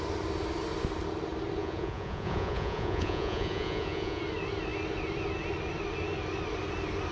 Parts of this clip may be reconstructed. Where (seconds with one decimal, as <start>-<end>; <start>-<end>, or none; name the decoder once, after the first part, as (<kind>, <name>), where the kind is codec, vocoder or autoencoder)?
1.6-4.2 (vocoder, Vocos)